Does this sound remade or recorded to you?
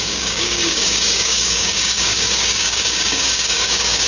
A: remade